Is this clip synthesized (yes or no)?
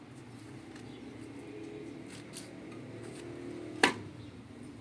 no